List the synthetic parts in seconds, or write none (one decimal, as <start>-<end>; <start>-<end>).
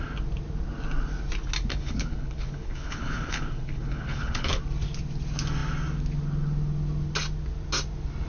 1.7-4.6